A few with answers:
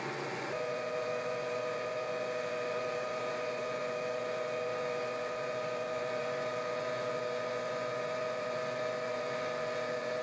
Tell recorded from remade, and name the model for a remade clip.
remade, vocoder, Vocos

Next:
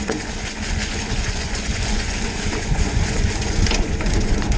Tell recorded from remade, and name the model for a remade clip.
remade, vocoder, Vocos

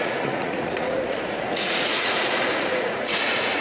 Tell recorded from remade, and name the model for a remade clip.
remade, vocoder, Vocos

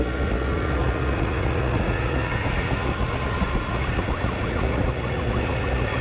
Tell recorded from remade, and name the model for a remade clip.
remade, vocoder, Vocos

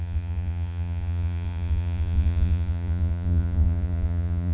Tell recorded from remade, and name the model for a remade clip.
remade, vocoder, Vocos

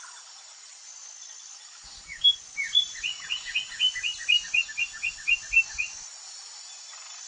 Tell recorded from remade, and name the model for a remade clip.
recorded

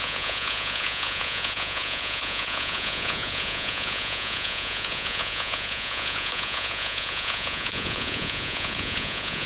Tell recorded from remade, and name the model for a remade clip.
remade, vocoder, Vocos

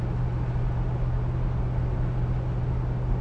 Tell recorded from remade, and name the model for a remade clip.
recorded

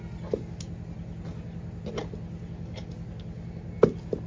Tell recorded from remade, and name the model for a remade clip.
recorded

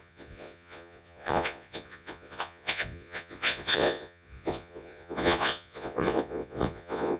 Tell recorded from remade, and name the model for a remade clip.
remade, vocoder, Vocos